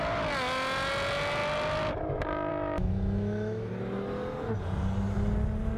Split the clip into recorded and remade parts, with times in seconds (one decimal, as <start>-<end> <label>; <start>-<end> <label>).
0.0-2.5 recorded; 2.5-3.7 remade; 3.7-5.8 recorded